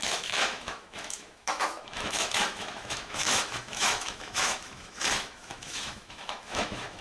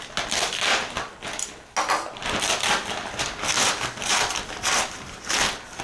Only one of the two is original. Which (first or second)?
second